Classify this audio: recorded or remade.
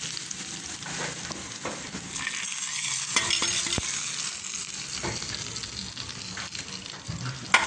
recorded